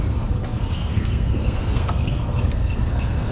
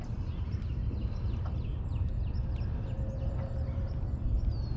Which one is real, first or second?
second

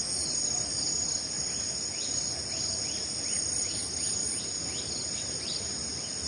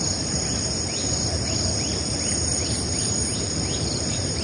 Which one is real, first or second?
first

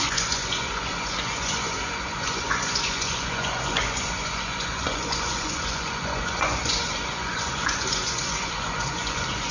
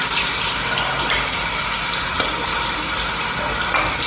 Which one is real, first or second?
second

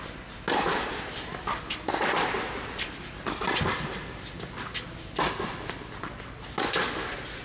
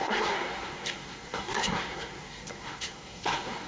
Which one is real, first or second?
first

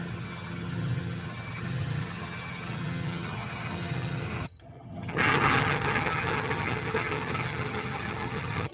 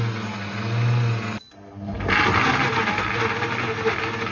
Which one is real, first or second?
second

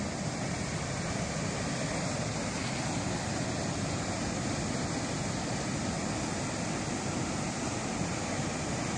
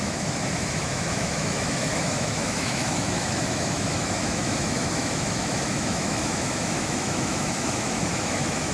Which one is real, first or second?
first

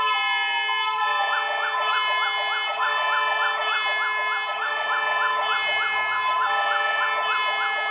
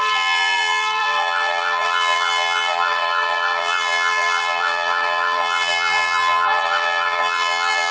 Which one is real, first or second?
first